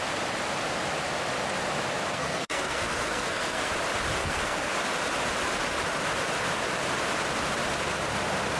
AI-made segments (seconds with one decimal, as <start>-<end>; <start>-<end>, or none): 2.1-3.7; 4.2-4.7